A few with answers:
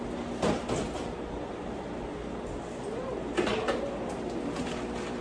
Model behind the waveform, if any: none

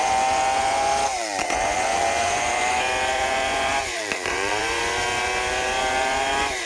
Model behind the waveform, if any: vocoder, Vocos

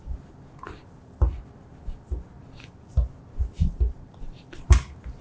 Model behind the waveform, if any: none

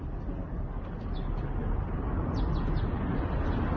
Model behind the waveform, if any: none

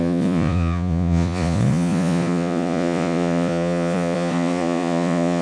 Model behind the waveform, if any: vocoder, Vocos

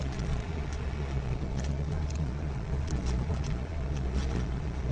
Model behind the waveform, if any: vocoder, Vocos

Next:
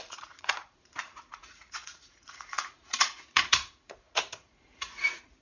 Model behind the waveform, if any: vocoder, Vocos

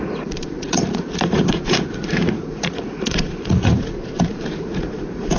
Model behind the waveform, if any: vocoder, Vocos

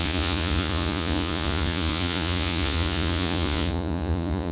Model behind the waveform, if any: vocoder, Vocos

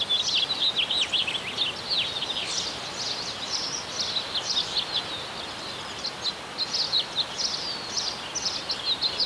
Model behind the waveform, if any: none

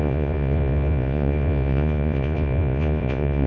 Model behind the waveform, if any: vocoder, Vocos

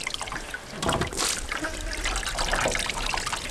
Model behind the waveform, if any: none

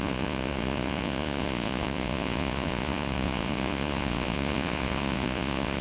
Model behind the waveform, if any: vocoder, Vocos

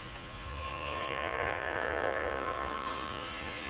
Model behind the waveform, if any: vocoder, Vocos